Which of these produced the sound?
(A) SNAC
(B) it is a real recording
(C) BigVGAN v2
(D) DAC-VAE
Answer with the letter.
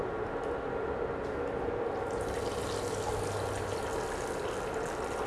B